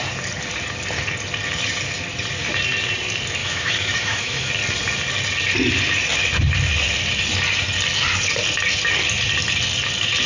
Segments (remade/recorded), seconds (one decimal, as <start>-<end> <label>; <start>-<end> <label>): 0.0-3.4 recorded; 3.4-4.5 remade; 4.5-10.3 recorded